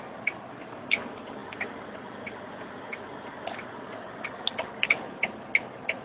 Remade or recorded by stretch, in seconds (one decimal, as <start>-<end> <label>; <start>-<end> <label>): 0.0-6.0 recorded